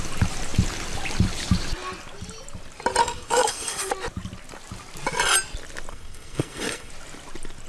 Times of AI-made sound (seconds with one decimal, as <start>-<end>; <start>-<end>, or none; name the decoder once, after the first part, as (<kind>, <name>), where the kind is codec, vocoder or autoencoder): 3.0-3.9 (codec, SNAC); 5.9-6.9